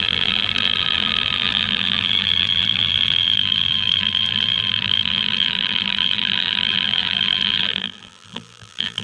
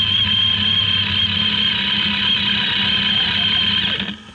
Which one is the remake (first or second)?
first